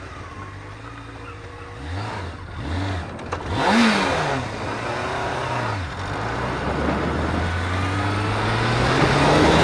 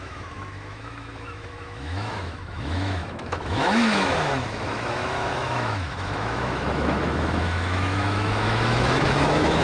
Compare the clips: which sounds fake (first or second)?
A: second